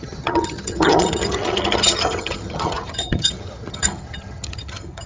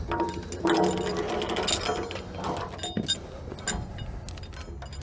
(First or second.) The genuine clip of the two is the second